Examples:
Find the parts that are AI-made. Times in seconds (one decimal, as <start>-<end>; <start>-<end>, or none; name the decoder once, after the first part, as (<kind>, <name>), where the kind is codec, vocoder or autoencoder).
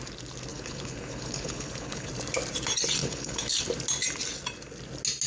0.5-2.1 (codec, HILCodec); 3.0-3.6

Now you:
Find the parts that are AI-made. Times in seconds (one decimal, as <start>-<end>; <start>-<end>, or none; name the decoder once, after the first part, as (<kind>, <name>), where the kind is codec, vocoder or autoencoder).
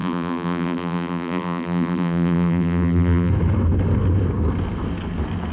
0.0-3.3 (vocoder, BigVGAN v2)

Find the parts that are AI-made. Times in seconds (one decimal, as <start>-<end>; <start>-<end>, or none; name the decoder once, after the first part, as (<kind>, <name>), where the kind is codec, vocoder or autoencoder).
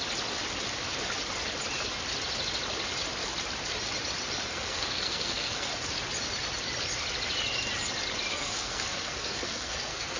4.5-5.7 (codec, SNAC); 8.3-10.2